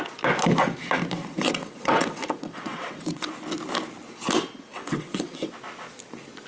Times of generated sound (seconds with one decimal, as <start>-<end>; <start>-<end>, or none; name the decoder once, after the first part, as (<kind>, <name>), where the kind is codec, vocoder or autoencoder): 1.2-3.3 (vocoder, WaveNeXt); 4.7-5.5